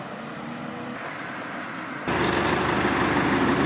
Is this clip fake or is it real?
real